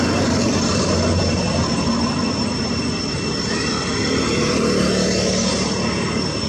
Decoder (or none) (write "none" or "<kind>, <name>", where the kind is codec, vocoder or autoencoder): none